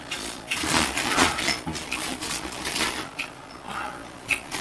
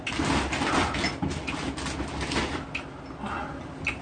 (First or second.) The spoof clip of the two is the first